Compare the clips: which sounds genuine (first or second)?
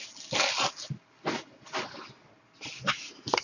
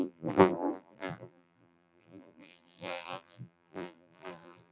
first